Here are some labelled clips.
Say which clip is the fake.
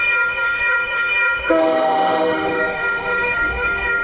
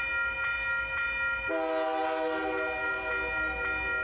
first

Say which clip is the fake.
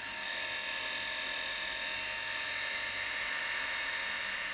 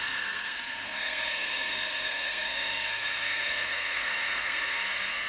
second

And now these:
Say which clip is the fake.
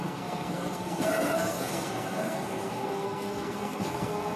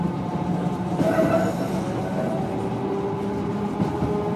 first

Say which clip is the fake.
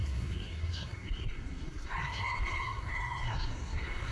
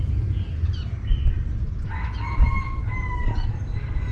first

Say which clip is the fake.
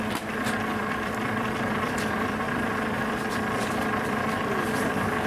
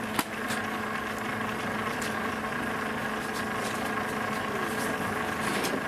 first